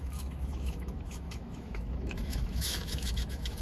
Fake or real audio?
fake